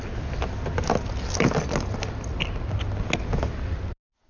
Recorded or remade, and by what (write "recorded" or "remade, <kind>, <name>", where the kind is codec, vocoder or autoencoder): recorded